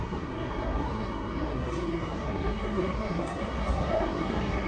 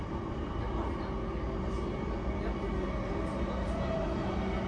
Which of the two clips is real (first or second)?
second